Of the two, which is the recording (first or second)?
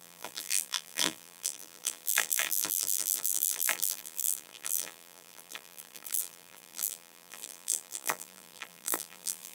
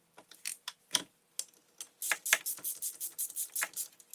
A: second